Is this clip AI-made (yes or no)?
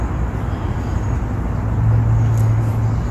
no